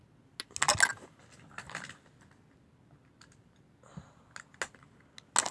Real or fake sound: real